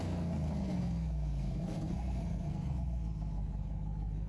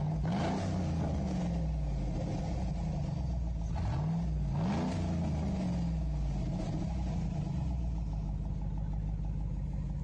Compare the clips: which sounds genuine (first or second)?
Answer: second